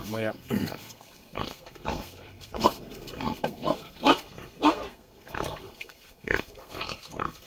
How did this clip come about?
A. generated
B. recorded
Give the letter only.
A